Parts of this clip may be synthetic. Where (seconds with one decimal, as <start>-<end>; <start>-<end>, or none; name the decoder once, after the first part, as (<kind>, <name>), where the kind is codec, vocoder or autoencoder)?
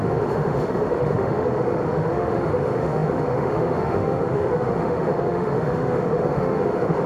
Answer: 0.0-7.1 (autoencoder, DAC-VAE)